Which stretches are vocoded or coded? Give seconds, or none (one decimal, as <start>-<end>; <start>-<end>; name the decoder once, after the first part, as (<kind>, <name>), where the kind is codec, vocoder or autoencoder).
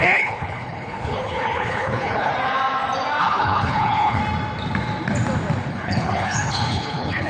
0.0-2.3 (codec, HILCodec); 3.2-4.2; 5.7-7.3